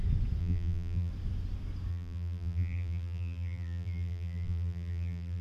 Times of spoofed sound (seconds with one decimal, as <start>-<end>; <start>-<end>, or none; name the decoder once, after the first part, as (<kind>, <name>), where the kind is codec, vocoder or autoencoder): 0.4-1.1 (vocoder, BigVGAN v2); 1.9-5.4